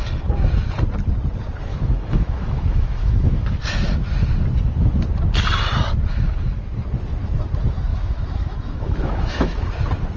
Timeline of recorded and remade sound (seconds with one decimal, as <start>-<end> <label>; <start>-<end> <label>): 0.0-1.7 recorded; 1.7-3.6 remade; 3.6-6.1 recorded; 6.1-6.7 remade; 6.7-7.9 recorded; 7.9-9.7 remade; 9.7-10.2 recorded